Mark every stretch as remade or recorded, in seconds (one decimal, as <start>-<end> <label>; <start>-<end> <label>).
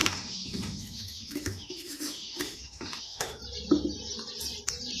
0.0-3.4 remade; 3.4-5.0 recorded